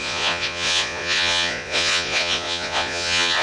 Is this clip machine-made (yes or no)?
yes